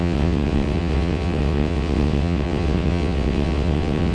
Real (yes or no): no